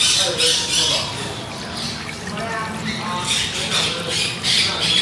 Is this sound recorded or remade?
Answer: recorded